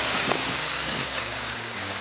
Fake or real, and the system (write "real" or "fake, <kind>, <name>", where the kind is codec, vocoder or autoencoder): fake, codec, DAC